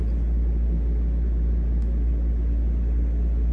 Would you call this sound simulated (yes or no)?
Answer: no